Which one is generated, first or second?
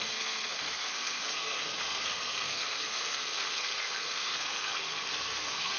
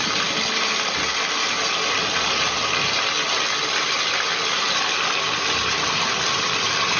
first